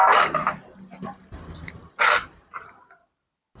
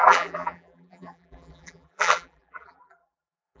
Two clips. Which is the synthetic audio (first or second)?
second